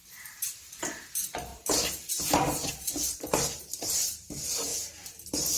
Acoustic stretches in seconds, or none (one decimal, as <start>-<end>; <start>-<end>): 4.7-5.6